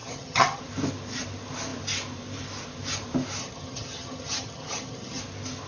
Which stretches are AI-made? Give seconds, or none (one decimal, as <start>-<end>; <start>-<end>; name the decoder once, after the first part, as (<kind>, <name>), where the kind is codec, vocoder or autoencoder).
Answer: 0.0-0.6 (vocoder, HiFi-GAN); 3.4-5.2